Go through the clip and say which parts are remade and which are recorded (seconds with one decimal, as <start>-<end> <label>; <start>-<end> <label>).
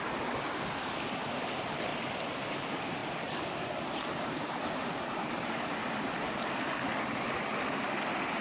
0.0-1.9 remade; 1.9-2.4 recorded; 2.4-3.0 remade; 3.0-4.2 recorded; 4.2-5.8 remade; 5.8-8.4 recorded